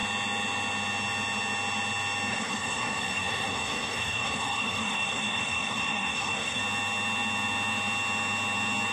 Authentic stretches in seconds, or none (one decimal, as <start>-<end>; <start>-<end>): 0.0-2.3; 6.6-8.9